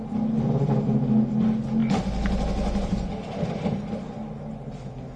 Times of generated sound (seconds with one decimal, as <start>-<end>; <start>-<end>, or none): none